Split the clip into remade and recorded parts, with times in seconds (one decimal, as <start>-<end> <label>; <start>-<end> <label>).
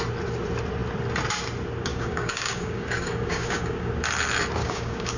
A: 0.0-1.9 recorded; 1.9-3.9 remade; 3.9-4.6 recorded; 4.6-5.2 remade